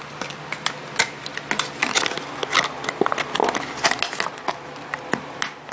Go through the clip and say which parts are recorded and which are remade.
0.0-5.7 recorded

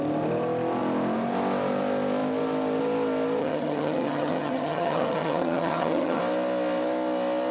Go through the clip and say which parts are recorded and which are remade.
0.0-3.4 recorded; 3.4-6.2 remade; 6.2-7.5 recorded